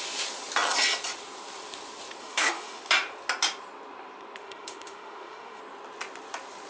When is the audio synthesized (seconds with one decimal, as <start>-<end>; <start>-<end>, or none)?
2.2-2.8; 4.4-5.6